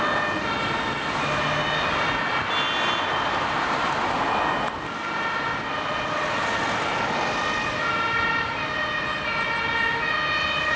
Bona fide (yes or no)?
yes